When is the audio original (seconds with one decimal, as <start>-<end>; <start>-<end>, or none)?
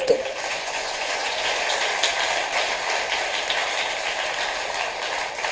0.0-0.5; 1.7-5.5